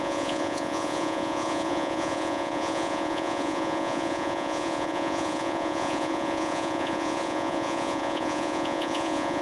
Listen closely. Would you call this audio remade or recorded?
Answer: remade